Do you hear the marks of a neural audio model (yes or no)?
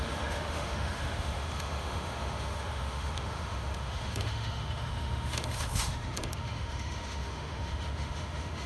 yes